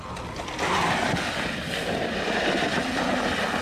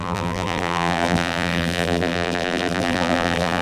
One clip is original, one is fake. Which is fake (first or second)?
second